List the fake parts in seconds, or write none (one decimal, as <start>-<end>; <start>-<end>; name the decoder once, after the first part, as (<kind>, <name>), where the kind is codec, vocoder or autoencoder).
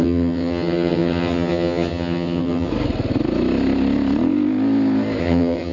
0.0-2.7 (vocoder, HiFi-GAN); 5.2-5.7